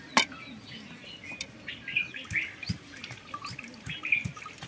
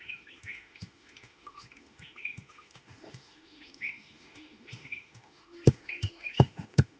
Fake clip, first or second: second